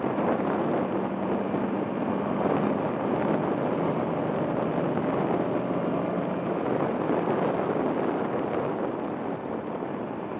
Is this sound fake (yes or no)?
no